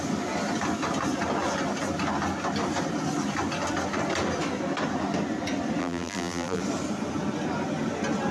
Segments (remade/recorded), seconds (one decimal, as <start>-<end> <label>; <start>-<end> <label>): 0.0-5.8 recorded; 5.8-6.6 remade; 6.6-8.3 recorded